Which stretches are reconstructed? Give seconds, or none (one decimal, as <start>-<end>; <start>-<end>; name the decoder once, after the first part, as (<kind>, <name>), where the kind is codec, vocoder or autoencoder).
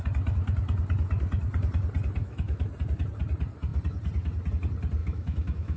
2.2-2.7 (autoencoder, DAC-VAE); 5.0-5.8